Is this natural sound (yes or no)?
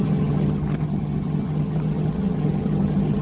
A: no